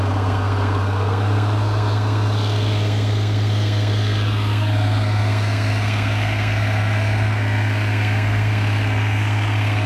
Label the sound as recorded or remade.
remade